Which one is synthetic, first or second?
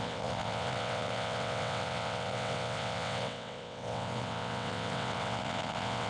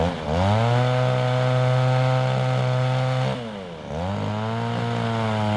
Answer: first